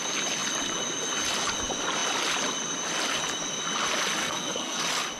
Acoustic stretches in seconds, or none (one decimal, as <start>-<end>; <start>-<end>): 0.0-4.2; 4.8-5.2